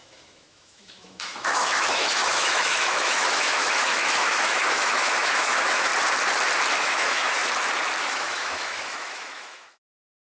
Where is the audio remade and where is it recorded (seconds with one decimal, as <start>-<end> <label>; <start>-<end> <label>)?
0.0-5.9 remade; 5.9-6.8 recorded; 6.8-7.4 remade; 7.4-8.0 recorded; 8.0-10.3 remade